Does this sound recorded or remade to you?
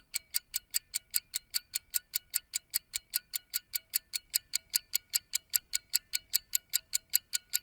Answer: remade